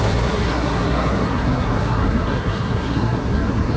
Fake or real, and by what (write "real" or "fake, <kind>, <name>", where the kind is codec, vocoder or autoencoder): fake, codec, SNAC